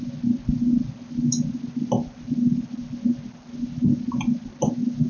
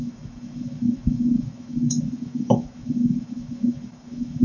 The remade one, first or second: second